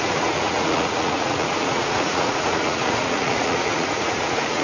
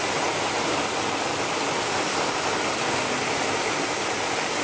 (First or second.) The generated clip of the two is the first